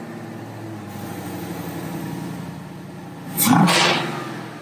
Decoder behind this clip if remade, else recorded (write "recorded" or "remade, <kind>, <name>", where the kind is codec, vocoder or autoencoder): recorded